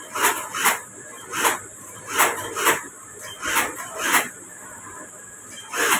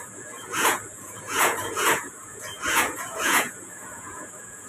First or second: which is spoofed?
second